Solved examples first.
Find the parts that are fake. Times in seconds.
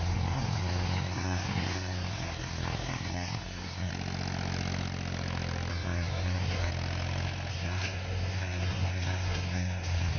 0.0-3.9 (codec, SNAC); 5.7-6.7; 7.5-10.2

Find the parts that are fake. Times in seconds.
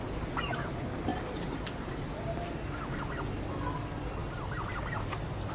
none